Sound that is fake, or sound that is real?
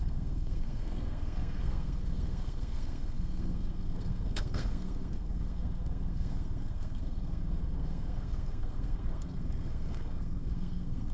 fake